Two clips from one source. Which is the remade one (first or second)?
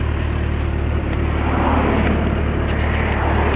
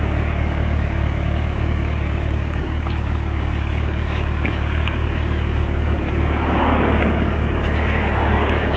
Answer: second